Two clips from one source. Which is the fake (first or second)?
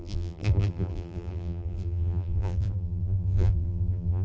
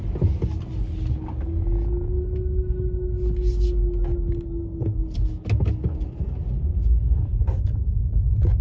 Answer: first